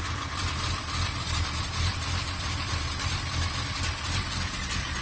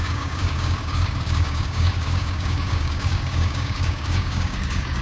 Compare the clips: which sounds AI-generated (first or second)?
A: second